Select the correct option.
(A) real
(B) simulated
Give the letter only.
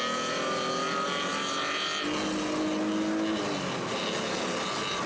A